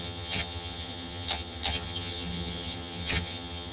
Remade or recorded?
remade